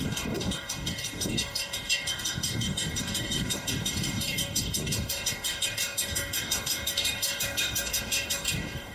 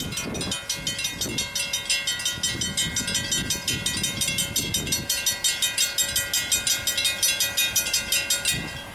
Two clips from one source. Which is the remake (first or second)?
first